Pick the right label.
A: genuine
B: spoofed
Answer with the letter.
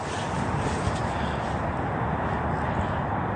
A